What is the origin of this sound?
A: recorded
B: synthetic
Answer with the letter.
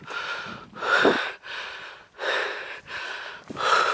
A